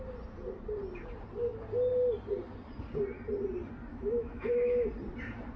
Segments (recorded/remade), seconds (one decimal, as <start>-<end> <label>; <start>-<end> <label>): 0.0-3.9 recorded; 3.9-4.9 remade; 4.9-5.6 recorded